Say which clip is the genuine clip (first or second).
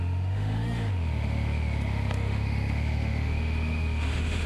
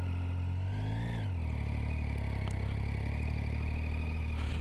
second